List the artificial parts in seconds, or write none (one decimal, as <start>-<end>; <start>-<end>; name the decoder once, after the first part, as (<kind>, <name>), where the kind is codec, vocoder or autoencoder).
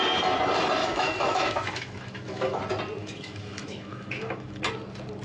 0.8-2.6 (autoencoder, DAC-VAE); 3.0-4.6